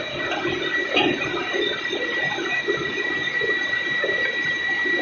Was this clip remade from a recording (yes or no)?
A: no